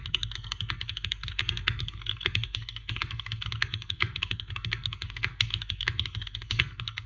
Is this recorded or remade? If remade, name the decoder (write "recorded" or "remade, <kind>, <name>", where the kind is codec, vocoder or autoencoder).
remade, codec, SNAC